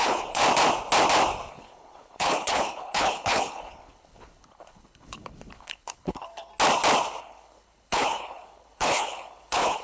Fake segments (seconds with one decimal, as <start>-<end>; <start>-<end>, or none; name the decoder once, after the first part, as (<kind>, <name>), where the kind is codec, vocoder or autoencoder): 0.0-0.4 (codec, HILCodec); 1.5-6.5; 7.2-9.8